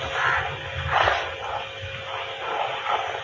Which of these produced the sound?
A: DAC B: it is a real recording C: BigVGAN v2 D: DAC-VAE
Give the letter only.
B